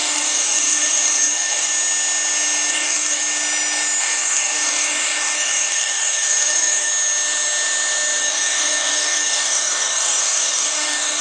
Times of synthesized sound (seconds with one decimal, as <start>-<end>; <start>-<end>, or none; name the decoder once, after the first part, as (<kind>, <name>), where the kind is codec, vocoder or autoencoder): 0.0-1.7 (codec, DAC); 2.7-3.2; 4.0-6.9; 8.2-11.2